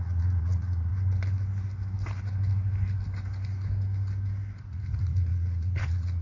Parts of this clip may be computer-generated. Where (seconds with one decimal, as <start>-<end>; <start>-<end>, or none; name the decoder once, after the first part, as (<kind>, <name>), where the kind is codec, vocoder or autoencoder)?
0.0-0.9 (vocoder, Vocos); 4.6-6.2

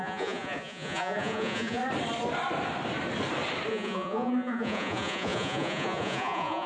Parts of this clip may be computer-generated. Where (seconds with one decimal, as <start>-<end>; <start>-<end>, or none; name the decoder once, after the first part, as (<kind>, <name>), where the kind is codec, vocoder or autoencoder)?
0.0-1.8 (vocoder, Vocos); 3.7-6.7

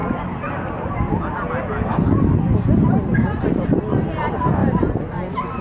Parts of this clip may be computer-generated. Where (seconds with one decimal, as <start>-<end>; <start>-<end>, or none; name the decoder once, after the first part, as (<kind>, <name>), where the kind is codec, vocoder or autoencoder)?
none

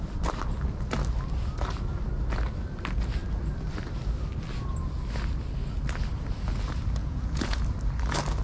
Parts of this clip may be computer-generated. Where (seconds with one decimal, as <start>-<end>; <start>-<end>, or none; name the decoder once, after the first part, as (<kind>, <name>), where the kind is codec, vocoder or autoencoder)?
7.0-7.6 (vocoder, Vocos)

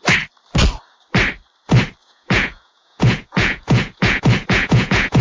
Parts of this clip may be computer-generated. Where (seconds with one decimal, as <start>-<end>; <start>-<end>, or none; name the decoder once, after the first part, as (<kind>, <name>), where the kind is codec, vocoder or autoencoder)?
2.0-5.2 (vocoder, Vocos)

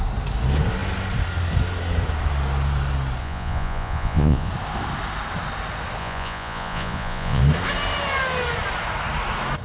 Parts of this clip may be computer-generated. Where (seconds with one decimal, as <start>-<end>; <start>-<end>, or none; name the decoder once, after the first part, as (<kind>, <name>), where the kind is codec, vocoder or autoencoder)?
3.2-4.5 (vocoder, Vocos); 6.0-7.4

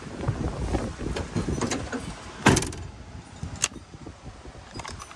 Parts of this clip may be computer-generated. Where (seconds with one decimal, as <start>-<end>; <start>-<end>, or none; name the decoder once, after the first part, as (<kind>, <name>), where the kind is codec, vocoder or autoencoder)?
none